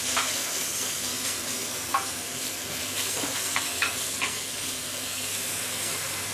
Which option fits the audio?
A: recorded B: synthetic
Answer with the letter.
B